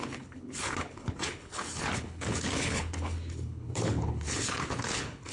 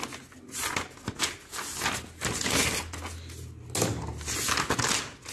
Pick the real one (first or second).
second